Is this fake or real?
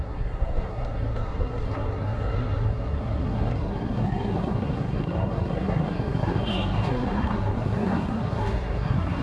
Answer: fake